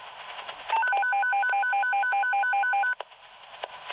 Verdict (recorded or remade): recorded